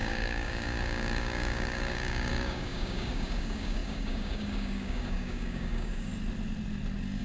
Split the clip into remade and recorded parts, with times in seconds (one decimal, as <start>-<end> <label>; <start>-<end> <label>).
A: 0.0-6.1 remade; 6.1-7.2 recorded